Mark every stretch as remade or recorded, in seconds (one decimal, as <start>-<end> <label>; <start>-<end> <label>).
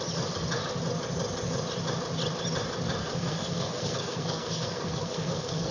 0.0-3.0 recorded; 3.0-5.7 remade